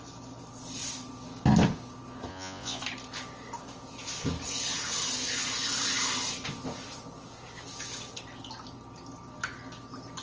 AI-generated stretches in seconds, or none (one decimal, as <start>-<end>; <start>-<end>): 2.3-2.8